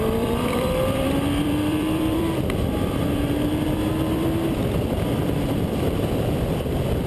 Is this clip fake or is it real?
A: fake